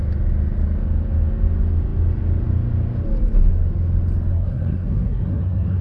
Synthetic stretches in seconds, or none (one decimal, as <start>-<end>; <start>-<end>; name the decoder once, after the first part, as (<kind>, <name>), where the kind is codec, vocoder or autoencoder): 4.3-5.8 (codec, SNAC)